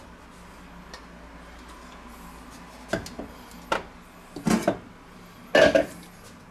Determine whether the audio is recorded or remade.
recorded